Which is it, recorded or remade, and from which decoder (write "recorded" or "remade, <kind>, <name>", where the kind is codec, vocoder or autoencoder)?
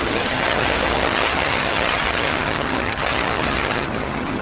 remade, vocoder, HiFi-GAN